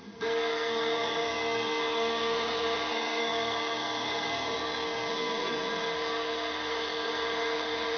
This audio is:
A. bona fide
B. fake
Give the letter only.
B